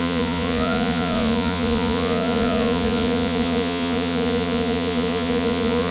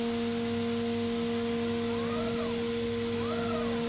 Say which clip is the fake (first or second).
first